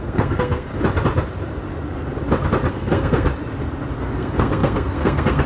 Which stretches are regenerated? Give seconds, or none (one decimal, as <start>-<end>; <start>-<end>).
0.0-0.7; 2.7-3.3; 4.0-5.5